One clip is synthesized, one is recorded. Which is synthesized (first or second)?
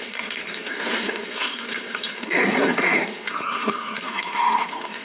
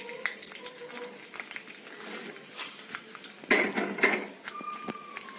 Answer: first